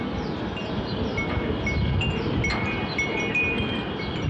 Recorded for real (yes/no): yes